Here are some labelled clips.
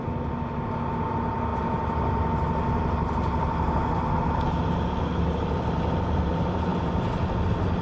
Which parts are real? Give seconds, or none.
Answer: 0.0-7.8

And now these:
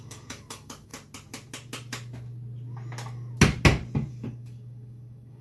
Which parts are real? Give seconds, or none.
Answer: 0.9-4.1

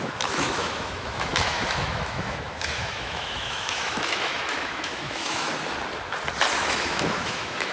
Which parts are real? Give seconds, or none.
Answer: 5.5-6.6

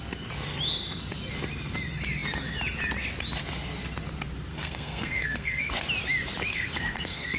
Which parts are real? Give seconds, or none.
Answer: 0.0-4.5; 5.7-6.5

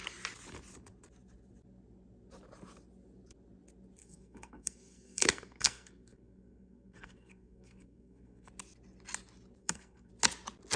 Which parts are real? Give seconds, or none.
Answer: 0.0-4.0; 8.5-9.6; 10.1-10.8

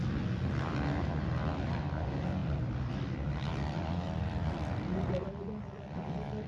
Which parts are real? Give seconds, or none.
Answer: 0.0-2.4; 5.3-6.5